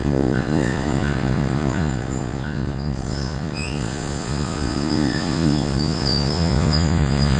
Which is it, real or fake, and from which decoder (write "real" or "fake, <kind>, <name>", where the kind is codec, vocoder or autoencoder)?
fake, vocoder, Vocos